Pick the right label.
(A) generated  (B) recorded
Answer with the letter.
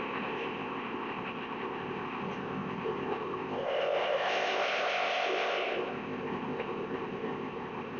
A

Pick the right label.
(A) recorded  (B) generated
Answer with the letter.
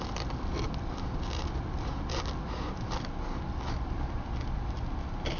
A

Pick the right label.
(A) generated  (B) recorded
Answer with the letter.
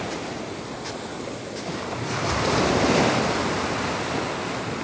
B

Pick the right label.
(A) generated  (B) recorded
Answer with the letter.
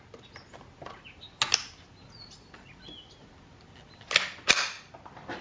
B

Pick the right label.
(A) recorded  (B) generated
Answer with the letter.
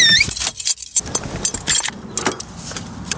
A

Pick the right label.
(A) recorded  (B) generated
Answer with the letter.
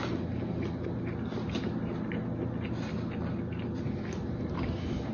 A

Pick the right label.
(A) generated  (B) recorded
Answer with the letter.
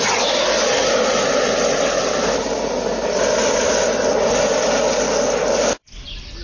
B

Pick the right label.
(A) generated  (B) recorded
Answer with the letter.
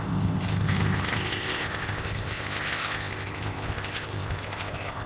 A